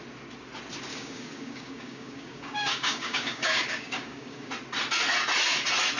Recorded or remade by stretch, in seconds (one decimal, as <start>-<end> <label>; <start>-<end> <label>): 0.0-0.9 recorded; 0.9-4.5 remade; 4.5-6.0 recorded